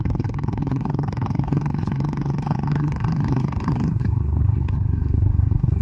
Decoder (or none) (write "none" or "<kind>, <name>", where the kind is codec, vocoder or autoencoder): codec, SNAC